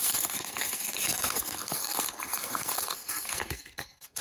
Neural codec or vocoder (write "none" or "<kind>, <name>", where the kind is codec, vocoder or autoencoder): codec, SNAC